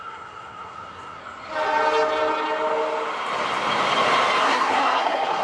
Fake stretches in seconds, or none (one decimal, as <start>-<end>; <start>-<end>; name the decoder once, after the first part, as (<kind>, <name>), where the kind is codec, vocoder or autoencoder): 0.0-1.2 (codec, SNAC); 4.4-5.4